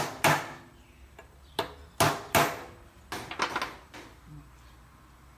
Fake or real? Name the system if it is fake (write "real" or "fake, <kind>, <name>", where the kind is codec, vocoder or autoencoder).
real